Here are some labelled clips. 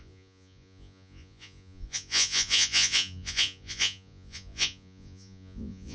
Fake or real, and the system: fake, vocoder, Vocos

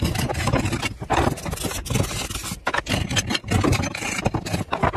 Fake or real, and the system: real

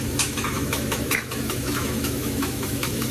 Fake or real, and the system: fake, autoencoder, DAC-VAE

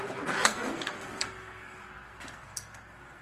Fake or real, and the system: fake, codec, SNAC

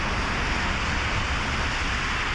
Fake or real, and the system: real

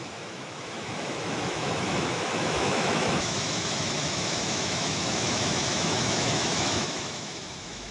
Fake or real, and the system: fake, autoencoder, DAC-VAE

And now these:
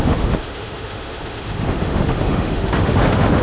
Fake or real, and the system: fake, autoencoder, DAC-VAE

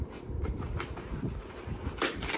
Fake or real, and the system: real